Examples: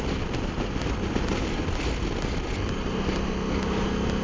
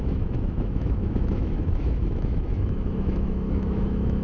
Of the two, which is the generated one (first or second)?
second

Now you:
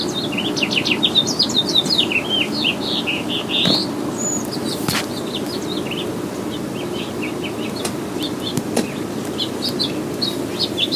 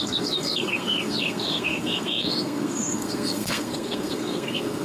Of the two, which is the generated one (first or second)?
second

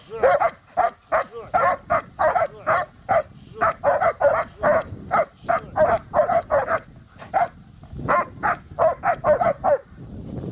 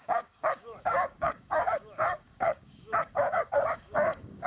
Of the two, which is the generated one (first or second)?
second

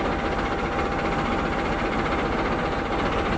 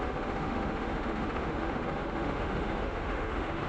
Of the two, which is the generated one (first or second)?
second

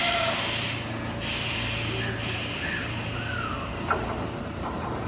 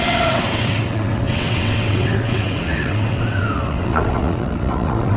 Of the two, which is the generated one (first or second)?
second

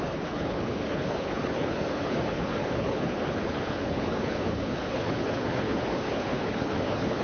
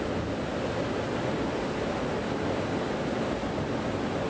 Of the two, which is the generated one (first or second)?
first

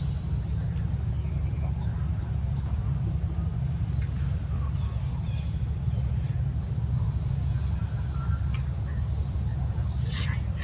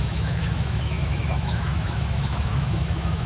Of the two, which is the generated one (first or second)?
second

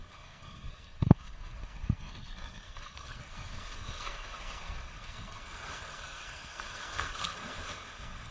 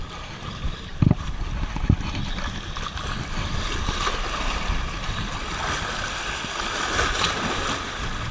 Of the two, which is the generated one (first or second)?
first